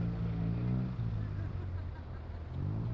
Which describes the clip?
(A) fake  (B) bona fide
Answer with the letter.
B